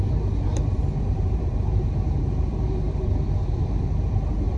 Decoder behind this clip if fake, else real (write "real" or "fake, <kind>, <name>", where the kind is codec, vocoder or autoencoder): fake, vocoder, BigVGAN v2